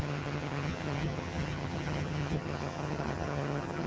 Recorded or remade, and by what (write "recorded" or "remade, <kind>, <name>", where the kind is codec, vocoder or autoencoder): remade, vocoder, HiFi-GAN